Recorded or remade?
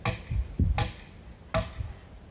recorded